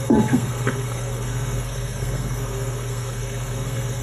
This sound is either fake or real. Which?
fake